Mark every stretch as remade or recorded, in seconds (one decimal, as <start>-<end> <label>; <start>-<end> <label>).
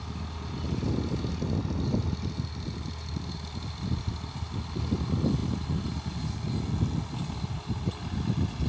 0.0-8.7 recorded